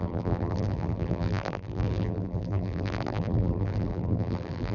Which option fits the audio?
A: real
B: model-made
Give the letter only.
B